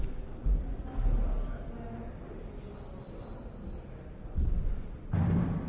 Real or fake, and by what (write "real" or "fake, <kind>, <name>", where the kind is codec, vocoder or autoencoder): real